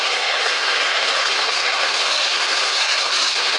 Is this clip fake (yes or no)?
yes